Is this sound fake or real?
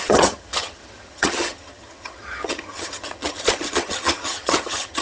fake